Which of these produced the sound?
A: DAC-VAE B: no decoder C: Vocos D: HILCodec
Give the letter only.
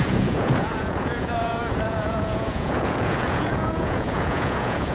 C